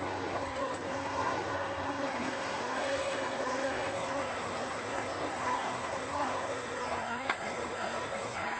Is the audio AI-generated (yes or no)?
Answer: yes